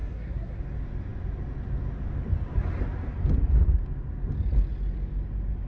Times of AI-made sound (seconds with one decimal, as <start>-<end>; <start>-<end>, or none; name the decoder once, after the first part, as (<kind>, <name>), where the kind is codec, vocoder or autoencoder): 0.0-0.6 (codec, SNAC)

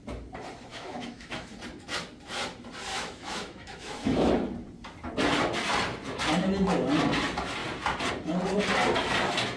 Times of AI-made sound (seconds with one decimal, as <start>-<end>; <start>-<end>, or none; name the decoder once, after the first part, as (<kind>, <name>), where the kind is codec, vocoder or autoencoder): 0.7-1.5 (autoencoder, DAC-VAE); 2.9-4.3